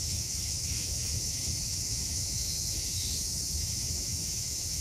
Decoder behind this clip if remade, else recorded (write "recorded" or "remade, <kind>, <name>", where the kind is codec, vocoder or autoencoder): remade, autoencoder, DAC-VAE